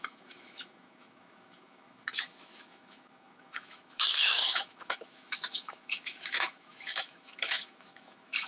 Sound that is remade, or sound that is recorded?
remade